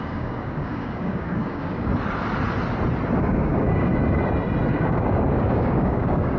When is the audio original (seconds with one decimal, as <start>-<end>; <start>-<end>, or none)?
1.9-3.2; 3.9-4.7